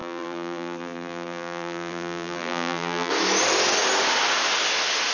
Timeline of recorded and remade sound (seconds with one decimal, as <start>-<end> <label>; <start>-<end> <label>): 0.0-3.1 remade; 3.1-5.1 recorded

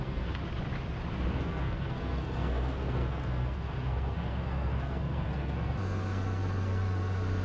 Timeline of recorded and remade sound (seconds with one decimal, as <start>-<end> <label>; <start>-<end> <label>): 0.0-0.4 remade; 0.4-1.3 recorded; 1.3-7.4 remade

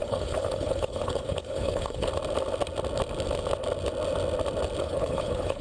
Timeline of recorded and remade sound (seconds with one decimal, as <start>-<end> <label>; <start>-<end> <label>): 0.0-2.1 remade; 2.1-4.8 recorded; 4.8-5.6 remade

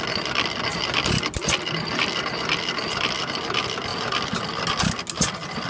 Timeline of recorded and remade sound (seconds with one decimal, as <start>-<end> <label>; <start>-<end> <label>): 0.0-3.9 recorded; 3.9-4.5 remade; 4.5-5.7 recorded

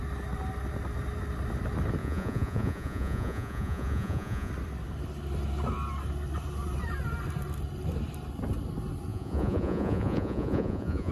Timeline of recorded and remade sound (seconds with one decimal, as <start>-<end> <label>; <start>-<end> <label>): 0.0-2.0 recorded; 2.0-4.5 remade; 4.5-9.1 recorded; 9.1-11.1 remade

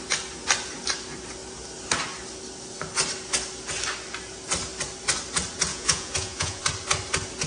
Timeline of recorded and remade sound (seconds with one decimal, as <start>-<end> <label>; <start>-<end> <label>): 0.0-5.7 recorded; 5.7-6.6 remade; 6.6-7.5 recorded

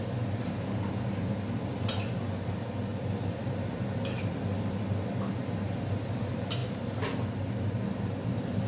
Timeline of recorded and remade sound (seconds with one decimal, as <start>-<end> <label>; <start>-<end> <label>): 0.0-8.7 recorded